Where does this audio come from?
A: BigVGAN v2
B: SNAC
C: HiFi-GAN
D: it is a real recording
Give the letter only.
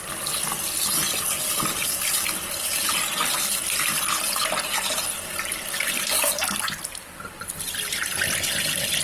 D